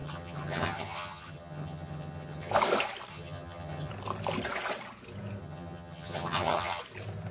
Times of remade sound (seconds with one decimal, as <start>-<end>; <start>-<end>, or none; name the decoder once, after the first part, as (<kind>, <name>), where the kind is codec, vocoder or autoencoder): 0.0-2.5 (vocoder, HiFi-GAN); 3.1-3.9; 5.4-6.8